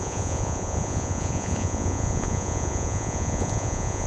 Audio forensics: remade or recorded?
remade